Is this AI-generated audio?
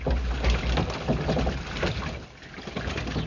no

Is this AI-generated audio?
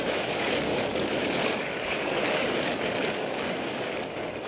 yes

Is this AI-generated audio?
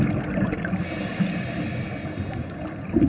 no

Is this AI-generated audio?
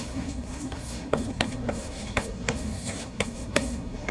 yes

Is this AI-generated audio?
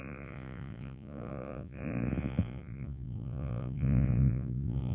yes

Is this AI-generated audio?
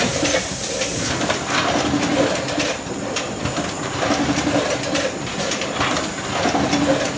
no